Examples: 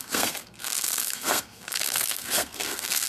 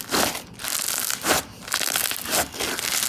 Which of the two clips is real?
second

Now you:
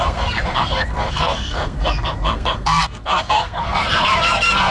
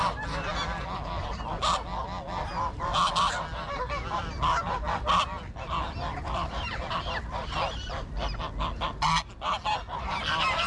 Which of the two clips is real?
second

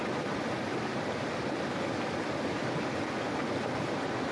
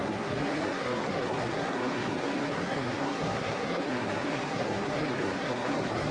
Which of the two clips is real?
first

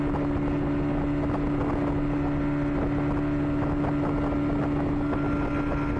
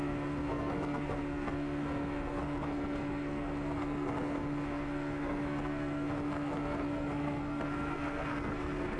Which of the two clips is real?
first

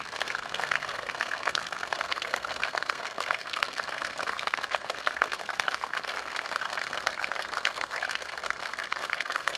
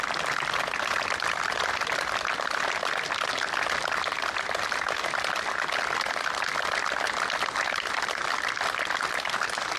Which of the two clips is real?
second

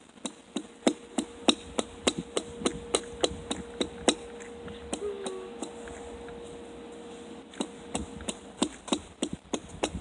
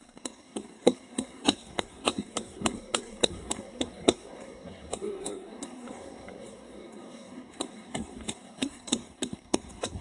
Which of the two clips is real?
first